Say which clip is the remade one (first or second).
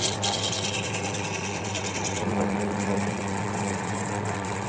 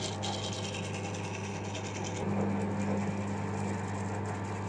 first